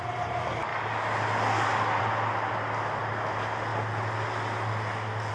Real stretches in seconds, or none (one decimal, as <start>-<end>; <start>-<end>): 0.0-5.3